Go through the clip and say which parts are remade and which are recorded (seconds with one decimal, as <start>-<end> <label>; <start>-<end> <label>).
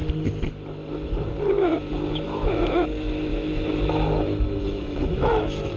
0.0-2.1 recorded; 2.1-5.8 remade